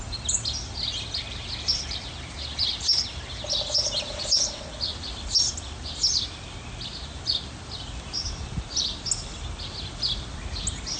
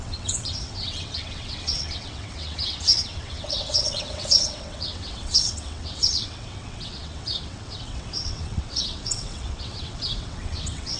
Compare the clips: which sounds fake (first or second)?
second